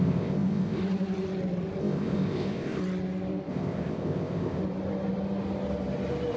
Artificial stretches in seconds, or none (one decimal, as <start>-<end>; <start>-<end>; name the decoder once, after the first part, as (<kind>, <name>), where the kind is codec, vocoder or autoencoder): 0.0-0.8 (codec, ZipCodec); 1.8-2.8; 3.5-4.6